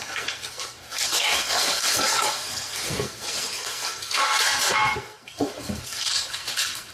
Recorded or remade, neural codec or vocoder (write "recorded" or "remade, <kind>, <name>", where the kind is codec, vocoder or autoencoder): remade, codec, SNAC